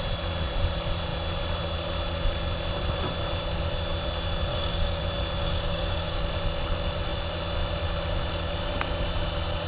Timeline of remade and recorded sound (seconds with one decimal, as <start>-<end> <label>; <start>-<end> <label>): 0.0-4.5 recorded; 4.5-5.0 remade; 5.0-5.4 recorded; 5.4-6.2 remade; 6.2-9.7 recorded